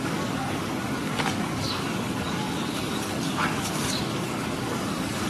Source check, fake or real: fake